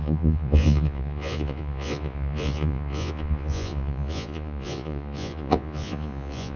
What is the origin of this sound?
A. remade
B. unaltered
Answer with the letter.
A